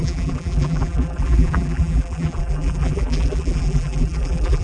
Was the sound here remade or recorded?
remade